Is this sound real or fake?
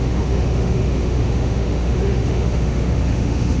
fake